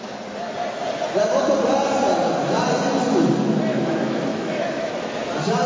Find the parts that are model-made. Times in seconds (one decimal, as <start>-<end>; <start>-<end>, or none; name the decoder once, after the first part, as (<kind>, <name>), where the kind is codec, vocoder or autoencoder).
3.7-4.9 (autoencoder, DAC-VAE)